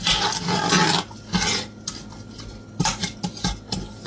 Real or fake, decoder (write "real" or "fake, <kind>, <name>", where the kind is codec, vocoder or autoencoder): real